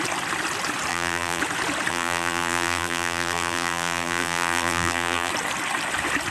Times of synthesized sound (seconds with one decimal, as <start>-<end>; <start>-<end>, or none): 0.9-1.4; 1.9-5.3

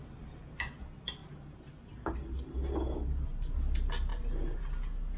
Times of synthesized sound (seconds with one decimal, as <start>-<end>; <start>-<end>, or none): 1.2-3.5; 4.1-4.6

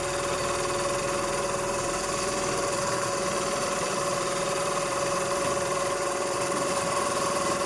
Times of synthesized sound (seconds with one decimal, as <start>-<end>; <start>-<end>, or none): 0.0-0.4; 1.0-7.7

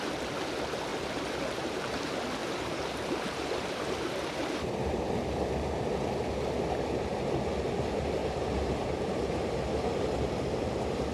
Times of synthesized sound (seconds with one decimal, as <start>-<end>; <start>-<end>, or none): 0.9-2.0; 2.4-5.9; 8.2-10.7